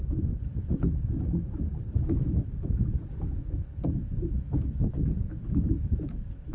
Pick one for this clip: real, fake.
fake